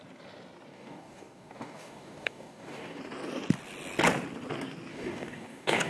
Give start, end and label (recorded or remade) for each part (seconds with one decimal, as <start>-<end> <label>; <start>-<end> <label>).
0.0-0.7 recorded; 0.7-3.0 remade; 3.0-4.9 recorded; 4.9-5.9 remade